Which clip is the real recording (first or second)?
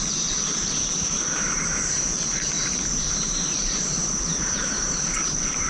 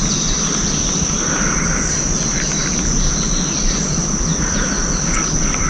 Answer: second